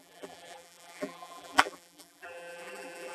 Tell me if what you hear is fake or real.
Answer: fake